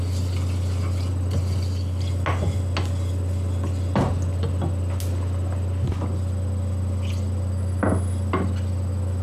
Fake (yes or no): no